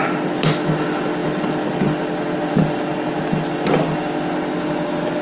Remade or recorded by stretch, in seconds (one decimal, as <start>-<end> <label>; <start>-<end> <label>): 0.0-5.2 recorded